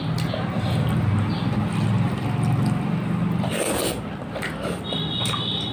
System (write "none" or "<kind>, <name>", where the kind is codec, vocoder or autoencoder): none